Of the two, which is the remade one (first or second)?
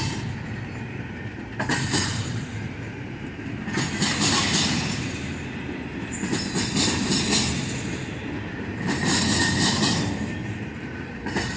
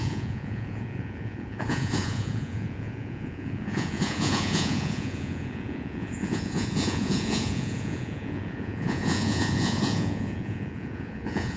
second